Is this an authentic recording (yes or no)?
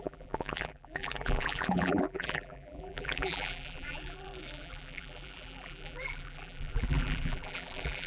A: no